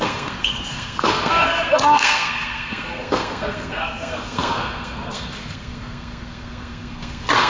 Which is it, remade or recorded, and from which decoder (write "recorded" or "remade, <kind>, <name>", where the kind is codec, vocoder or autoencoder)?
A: remade, codec, SNAC